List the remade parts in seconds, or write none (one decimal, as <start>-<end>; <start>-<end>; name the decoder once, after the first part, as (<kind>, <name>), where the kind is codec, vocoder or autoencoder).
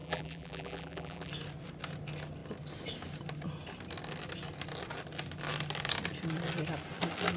0.0-1.3 (vocoder, BigVGAN v2)